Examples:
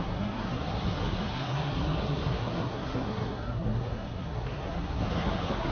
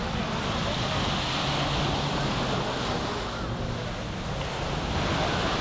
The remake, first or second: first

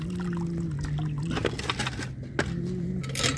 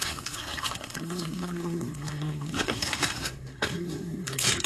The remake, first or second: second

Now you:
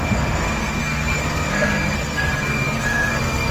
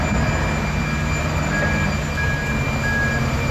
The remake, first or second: first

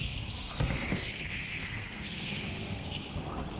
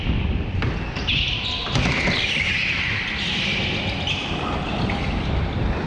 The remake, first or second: first